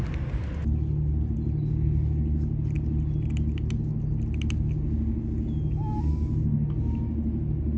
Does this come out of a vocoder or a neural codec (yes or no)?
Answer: no